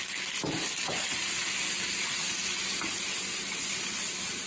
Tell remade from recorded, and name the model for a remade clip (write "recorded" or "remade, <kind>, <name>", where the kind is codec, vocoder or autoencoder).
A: recorded